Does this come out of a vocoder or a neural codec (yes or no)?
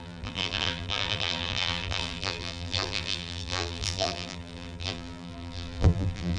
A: yes